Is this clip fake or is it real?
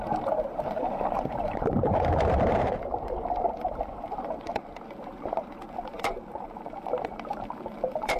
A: fake